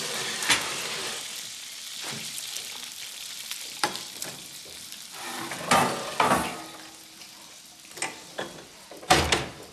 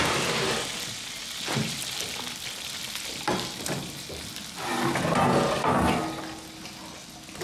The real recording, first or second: second